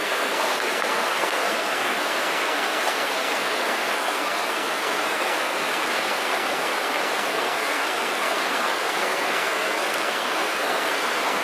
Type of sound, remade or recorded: remade